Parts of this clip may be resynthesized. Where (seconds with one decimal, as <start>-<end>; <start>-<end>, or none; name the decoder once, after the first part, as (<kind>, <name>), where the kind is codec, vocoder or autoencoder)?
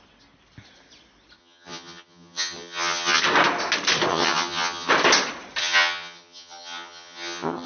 1.4-3.2 (vocoder, HiFi-GAN); 4.1-4.9; 5.6-7.7